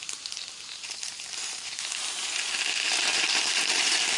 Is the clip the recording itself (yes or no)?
no